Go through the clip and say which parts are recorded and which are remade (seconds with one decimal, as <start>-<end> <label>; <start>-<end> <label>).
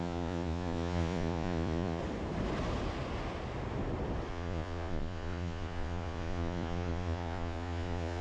0.0-2.0 remade; 2.0-4.3 recorded; 4.3-8.2 remade